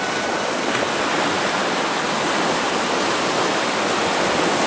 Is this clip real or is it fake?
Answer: real